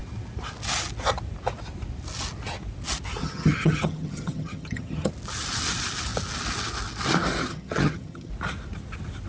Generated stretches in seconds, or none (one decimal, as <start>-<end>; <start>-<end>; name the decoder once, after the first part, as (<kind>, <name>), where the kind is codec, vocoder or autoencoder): 3.2-5.1 (vocoder, HiFi-GAN); 7.4-8.3